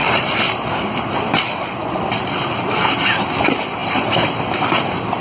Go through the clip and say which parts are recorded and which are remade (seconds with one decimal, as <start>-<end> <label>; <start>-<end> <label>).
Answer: 0.0-1.8 remade; 1.8-5.2 recorded